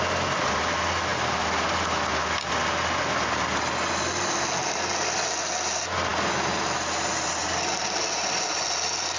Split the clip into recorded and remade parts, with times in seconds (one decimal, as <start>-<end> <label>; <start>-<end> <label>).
0.0-9.2 recorded